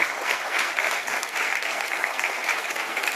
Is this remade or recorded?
remade